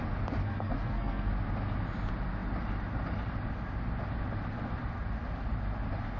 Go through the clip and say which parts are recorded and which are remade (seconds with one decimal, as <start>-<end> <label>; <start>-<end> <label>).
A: 0.0-0.4 recorded; 0.4-1.3 remade; 1.3-6.2 recorded